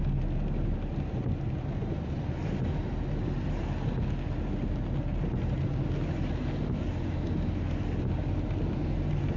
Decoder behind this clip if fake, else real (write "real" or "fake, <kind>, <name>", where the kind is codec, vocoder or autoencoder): real